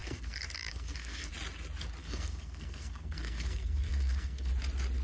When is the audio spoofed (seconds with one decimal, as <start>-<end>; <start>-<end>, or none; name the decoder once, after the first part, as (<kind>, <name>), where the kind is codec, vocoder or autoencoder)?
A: 0.0-1.3 (codec, SNAC); 2.0-4.5